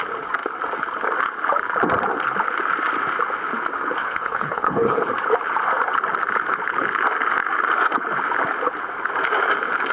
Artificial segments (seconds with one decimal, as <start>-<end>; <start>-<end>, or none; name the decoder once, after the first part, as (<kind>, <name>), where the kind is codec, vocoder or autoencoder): 4.0-5.0 (codec, HILCodec)

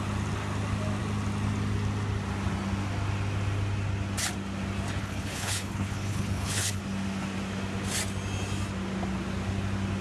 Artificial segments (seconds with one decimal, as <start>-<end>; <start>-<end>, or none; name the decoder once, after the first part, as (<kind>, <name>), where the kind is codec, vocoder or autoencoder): 5.0-6.8 (codec, HILCodec)

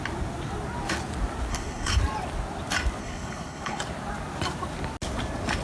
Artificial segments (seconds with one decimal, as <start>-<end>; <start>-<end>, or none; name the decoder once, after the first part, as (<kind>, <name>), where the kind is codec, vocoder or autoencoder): 1.5-2.0 (codec, HILCodec); 3.0-3.8

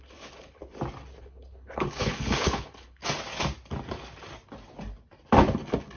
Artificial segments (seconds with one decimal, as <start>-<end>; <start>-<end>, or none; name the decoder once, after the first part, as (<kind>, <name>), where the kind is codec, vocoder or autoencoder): 0.0-0.6 (codec, HILCodec); 1.2-3.0

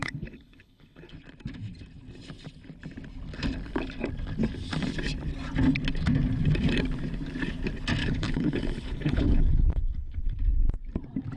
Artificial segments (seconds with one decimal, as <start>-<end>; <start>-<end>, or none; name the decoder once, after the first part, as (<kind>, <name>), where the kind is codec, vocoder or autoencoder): 0.0-1.1 (codec, HILCodec); 8.0-10.4